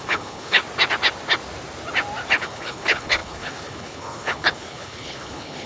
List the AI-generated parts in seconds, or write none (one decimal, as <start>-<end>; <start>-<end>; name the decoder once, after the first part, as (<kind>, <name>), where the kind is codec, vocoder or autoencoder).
0.0-0.6 (codec, HILCodec); 2.3-5.7